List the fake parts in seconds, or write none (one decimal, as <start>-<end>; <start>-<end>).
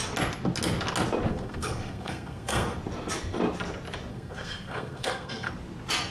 1.3-2.8; 4.1-5.5